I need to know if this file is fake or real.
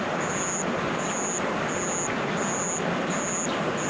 real